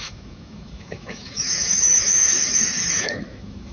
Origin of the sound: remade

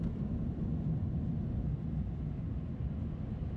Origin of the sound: recorded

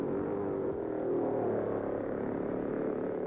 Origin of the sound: recorded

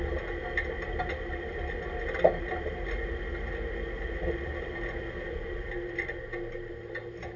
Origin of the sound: recorded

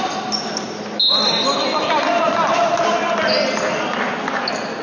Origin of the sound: recorded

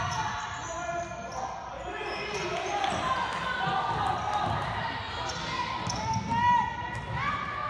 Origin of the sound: recorded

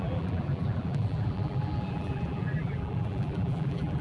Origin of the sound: remade